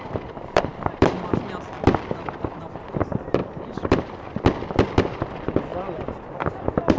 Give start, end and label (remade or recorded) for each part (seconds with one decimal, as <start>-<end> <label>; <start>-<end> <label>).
0.0-7.0 remade